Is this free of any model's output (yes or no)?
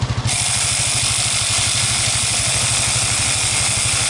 yes